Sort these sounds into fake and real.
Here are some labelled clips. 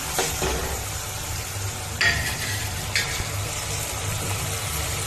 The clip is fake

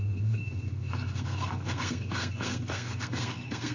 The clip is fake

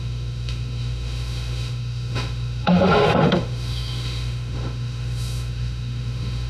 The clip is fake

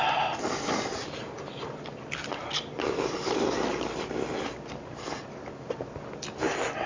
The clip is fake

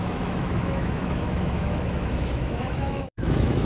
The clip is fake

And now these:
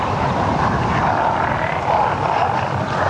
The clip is real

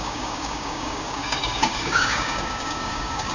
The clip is fake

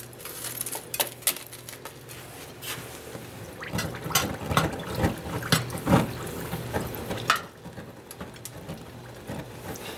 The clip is real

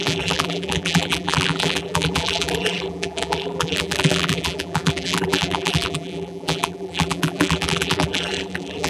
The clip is fake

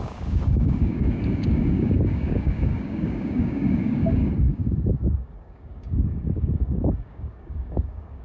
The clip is fake